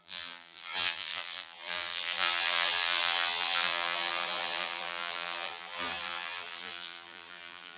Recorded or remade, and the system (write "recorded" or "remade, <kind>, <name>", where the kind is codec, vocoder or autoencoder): remade, vocoder, BigVGAN v2